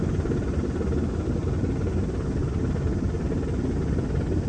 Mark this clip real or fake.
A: real